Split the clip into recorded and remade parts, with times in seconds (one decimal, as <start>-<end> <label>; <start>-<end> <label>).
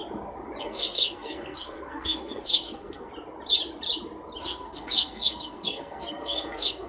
0.0-0.6 recorded; 0.6-3.1 remade; 3.1-4.4 recorded; 4.4-6.9 remade